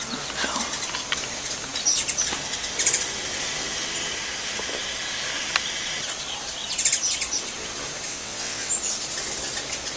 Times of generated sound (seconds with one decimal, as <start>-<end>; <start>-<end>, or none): 8.1-8.7